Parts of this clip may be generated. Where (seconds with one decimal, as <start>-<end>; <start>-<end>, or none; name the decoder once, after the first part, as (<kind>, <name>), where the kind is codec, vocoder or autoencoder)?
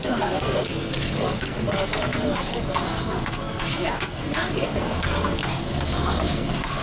0.0-6.8 (codec, SNAC)